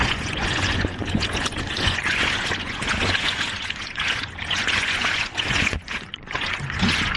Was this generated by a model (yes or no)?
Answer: yes